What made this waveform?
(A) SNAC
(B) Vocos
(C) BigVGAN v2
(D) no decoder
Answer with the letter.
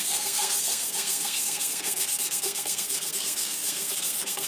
A